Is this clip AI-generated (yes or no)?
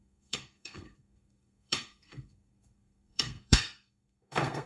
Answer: yes